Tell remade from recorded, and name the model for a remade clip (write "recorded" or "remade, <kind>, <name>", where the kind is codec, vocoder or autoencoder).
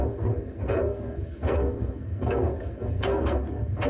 remade, codec, SNAC